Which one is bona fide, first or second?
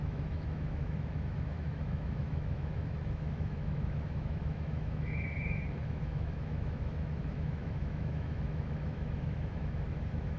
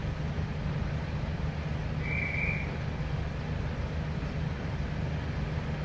second